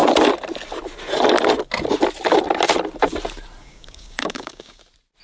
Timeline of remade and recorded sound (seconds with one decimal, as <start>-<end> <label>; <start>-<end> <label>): 0.0-3.6 recorded; 3.6-4.8 remade; 4.8-5.2 recorded